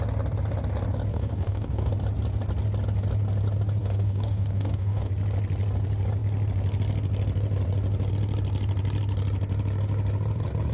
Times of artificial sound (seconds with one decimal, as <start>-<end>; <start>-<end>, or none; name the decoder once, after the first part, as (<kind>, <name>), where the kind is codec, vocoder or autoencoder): 1.1-1.9 (codec, DAC); 3.8-5.1